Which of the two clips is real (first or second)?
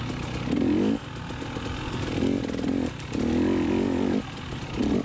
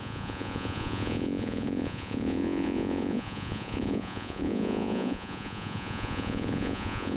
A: first